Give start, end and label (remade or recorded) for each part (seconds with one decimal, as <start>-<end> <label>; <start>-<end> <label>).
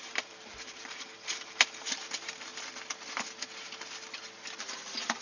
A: 0.0-2.5 remade; 2.5-5.2 recorded